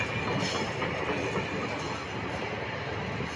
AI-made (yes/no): no